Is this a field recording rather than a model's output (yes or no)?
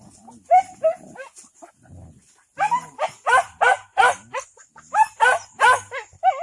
yes